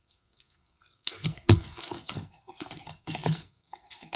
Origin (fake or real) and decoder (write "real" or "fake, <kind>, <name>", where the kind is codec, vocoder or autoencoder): fake, codec, SNAC